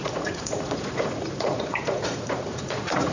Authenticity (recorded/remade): remade